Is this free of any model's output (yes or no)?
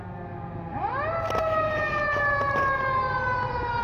yes